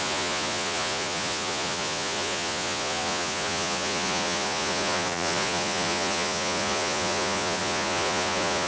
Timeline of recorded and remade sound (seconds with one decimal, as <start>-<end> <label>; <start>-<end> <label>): 0.0-8.7 remade